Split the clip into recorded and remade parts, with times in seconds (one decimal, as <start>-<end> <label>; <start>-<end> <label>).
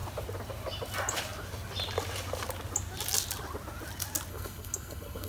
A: 0.0-4.3 recorded; 4.3-5.3 remade